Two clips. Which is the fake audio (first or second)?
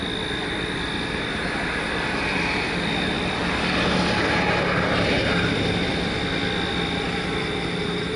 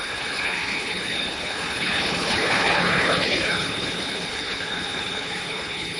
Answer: second